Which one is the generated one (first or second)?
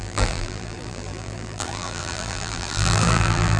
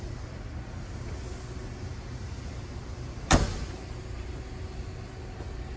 first